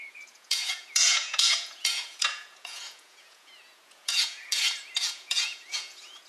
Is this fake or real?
fake